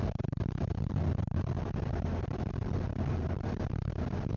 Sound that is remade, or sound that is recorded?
recorded